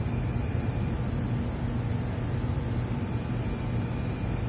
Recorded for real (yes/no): yes